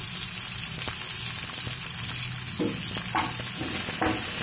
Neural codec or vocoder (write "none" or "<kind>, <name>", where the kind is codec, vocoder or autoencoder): none